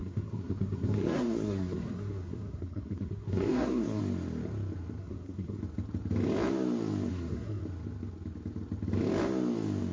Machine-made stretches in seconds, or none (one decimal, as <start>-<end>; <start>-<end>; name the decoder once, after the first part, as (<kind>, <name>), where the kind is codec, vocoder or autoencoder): 0.0-4.0 (codec, SNAC); 5.0-5.6; 7.1-7.6